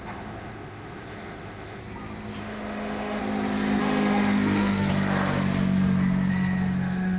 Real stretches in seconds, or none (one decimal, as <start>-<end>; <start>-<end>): 1.8-2.4; 3.2-3.8; 4.9-6.3